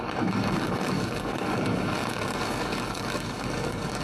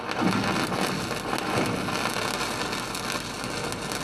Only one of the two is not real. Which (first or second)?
first